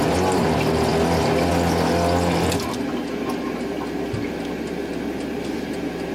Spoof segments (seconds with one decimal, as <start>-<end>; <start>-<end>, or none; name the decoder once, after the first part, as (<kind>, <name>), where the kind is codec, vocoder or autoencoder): none